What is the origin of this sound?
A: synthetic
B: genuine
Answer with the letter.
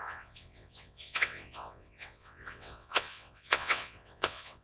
A